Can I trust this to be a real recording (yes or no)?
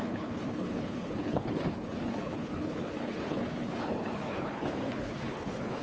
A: no